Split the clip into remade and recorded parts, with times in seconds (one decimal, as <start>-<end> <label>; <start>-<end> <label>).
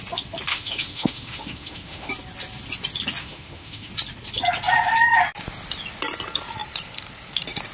0.0-0.5 recorded; 0.5-2.1 remade; 2.1-3.2 recorded; 3.2-3.9 remade; 3.9-7.7 recorded